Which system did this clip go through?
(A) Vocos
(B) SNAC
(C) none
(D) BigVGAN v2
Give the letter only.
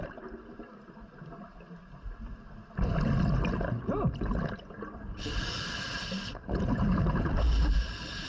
D